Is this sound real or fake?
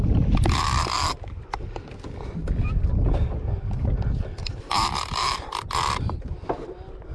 real